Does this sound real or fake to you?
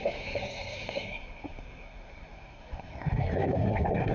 fake